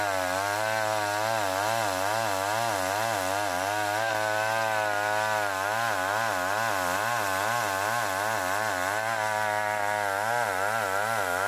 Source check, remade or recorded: recorded